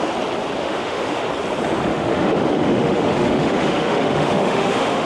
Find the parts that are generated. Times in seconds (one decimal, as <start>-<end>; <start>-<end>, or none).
0.6-1.3; 1.9-5.1

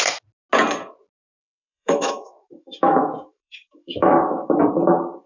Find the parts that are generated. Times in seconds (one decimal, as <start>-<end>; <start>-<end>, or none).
1.4-4.6

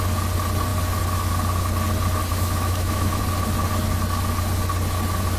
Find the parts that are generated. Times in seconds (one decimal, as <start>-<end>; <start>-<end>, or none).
2.3-3.2